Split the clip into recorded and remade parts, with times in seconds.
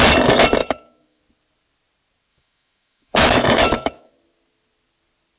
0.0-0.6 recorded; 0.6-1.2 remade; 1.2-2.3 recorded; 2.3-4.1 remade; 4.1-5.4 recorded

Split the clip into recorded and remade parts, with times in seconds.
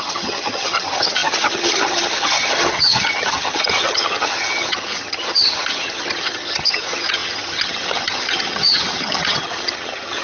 0.0-10.2 remade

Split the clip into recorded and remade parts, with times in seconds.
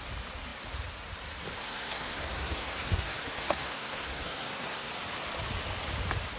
0.0-1.6 recorded; 1.6-4.9 remade; 4.9-6.4 recorded